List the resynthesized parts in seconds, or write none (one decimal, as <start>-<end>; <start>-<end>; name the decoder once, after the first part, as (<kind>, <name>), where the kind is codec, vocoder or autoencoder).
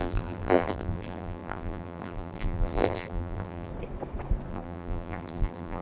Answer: 0.0-3.7 (vocoder, BigVGAN v2); 4.5-5.8